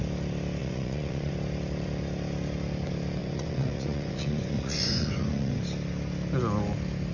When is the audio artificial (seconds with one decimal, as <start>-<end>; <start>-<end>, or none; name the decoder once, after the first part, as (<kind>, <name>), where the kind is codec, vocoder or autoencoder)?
0.6-1.3 (vocoder, Vocos); 3.2-5.6